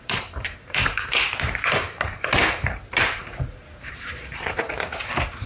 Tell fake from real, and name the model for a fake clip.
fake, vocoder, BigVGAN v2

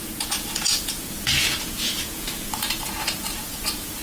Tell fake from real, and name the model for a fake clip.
fake, vocoder, Vocos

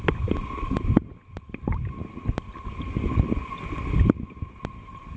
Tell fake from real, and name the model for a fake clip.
real